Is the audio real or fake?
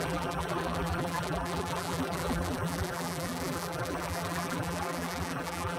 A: fake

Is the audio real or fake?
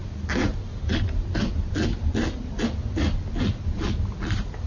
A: real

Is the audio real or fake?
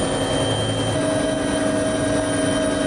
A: real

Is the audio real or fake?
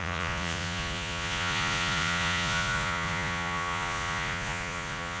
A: fake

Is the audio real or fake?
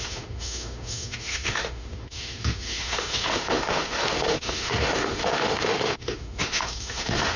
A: fake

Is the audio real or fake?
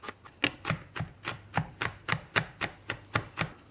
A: real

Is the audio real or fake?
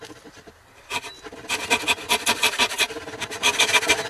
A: real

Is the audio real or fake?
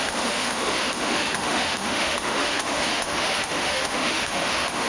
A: fake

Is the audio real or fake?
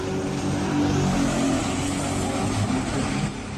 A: real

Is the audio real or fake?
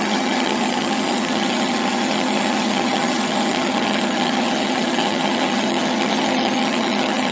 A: fake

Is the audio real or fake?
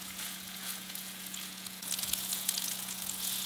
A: fake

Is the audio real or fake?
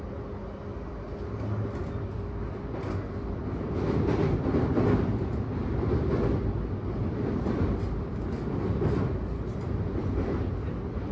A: real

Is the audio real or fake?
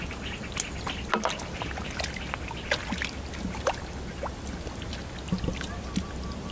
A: real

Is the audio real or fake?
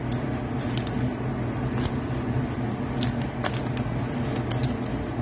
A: real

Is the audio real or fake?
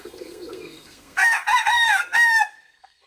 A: fake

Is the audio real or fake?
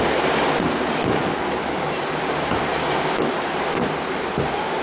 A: real